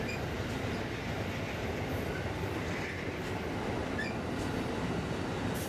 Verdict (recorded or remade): recorded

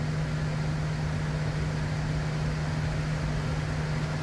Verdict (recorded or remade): recorded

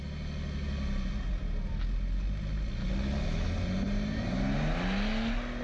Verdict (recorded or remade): recorded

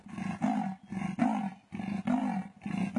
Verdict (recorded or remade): recorded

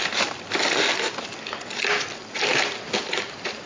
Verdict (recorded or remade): recorded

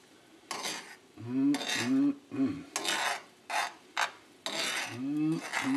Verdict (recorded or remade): recorded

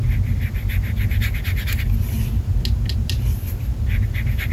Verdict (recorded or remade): recorded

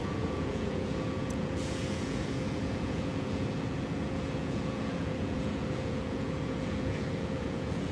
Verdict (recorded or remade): remade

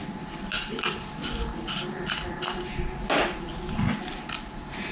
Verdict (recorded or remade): recorded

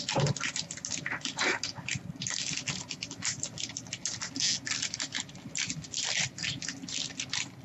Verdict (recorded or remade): recorded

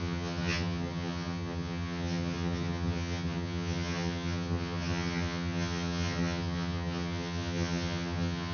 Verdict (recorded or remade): remade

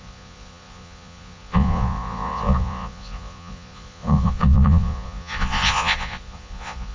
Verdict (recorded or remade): remade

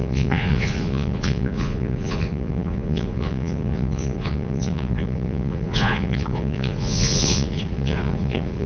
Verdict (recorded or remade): remade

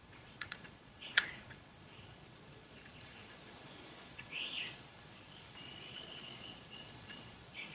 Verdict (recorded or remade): remade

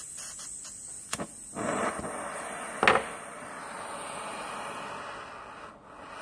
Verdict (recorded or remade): recorded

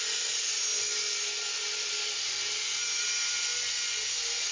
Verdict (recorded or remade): recorded